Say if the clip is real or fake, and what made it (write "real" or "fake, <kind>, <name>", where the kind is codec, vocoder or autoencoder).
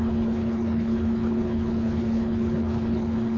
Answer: fake, codec, HILCodec